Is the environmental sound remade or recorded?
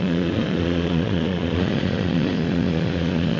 remade